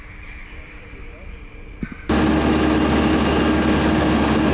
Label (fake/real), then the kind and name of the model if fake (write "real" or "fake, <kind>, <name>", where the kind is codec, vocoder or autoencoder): real